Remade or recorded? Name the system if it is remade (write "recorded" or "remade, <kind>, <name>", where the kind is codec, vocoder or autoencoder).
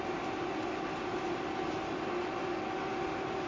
recorded